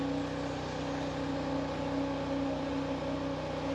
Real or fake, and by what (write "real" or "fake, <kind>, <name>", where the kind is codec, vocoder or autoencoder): real